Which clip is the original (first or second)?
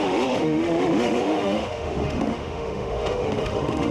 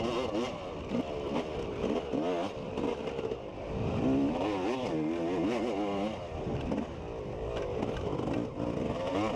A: second